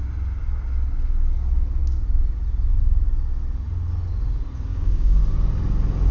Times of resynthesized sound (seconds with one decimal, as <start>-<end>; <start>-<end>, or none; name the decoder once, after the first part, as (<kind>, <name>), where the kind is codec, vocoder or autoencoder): 4.7-5.2 (codec, DAC)